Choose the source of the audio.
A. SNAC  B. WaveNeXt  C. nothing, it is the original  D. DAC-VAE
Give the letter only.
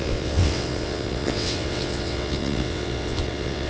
B